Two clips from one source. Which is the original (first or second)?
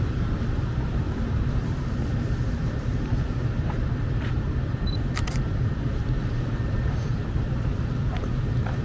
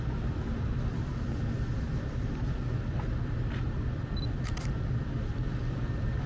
second